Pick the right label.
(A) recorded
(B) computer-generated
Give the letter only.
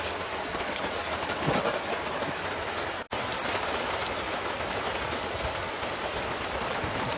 A